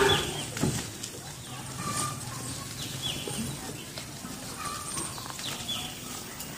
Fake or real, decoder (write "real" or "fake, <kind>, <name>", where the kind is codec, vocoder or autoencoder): real